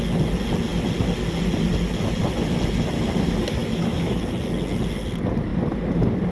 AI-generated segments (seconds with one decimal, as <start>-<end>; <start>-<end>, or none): 3.6-4.2